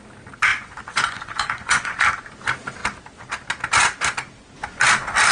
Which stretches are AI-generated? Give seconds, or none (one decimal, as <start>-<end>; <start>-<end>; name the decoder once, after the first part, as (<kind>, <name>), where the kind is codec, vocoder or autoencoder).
0.5-2.0 (vocoder, Vocos)

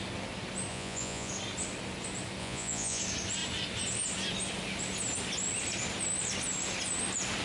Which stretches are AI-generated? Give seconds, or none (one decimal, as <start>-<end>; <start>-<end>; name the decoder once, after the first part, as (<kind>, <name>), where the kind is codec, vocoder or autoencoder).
0.7-1.3 (vocoder, Vocos); 2.4-3.0

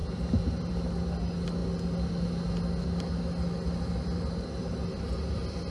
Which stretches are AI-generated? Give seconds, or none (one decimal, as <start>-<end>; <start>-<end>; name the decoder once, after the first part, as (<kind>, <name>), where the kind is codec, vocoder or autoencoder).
none

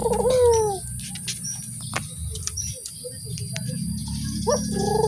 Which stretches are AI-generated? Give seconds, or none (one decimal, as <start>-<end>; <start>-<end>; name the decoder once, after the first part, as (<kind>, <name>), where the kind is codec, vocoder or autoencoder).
none

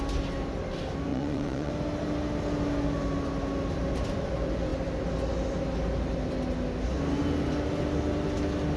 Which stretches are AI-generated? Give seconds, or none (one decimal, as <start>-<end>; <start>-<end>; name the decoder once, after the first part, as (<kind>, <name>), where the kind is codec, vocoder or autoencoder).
1.1-1.7 (vocoder, Vocos)

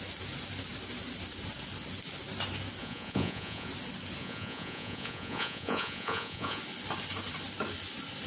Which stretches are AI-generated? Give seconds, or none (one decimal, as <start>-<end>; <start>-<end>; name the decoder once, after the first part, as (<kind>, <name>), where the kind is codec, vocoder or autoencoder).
2.8-3.7 (vocoder, Vocos); 4.2-6.6

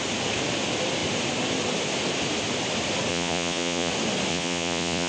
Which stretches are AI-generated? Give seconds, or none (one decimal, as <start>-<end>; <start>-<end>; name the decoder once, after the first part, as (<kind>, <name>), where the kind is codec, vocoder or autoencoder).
3.1-3.9 (vocoder, Vocos); 4.3-5.1